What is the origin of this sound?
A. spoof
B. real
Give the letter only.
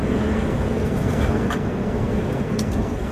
A